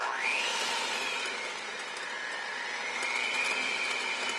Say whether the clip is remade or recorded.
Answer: recorded